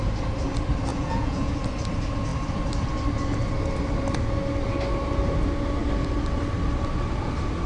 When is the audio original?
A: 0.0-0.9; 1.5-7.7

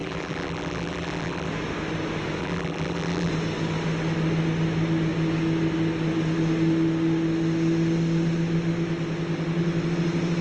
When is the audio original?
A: 1.5-2.4; 3.3-10.4